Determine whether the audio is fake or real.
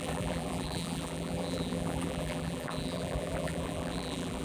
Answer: fake